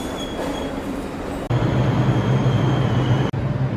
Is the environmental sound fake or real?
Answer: real